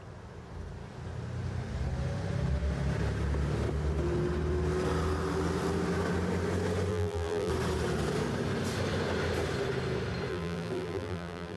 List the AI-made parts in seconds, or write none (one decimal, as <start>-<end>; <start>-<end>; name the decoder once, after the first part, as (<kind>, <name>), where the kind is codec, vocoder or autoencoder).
6.9-7.5 (vocoder, BigVGAN v2); 10.3-11.6